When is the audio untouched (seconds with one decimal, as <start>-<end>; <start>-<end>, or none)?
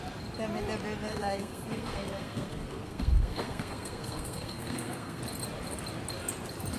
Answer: 0.0-1.1; 5.2-6.8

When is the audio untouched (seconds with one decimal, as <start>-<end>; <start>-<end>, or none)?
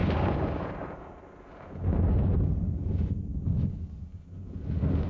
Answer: 0.0-5.1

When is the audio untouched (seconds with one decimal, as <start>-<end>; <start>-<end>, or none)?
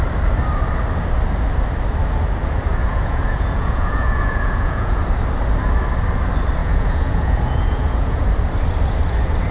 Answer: 0.0-2.8; 5.0-6.6; 8.2-9.5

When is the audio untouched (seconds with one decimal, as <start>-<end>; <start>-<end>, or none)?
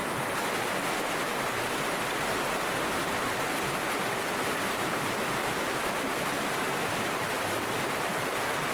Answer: 0.0-4.7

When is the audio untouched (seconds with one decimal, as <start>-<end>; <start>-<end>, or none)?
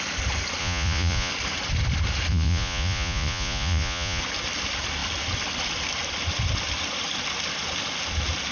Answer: 0.0-0.6; 1.3-2.3; 4.2-8.5